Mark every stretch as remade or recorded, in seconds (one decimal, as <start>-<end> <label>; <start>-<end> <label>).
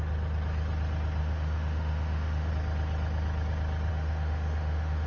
0.0-1.2 recorded; 1.2-2.5 remade; 2.5-3.9 recorded; 3.9-5.1 remade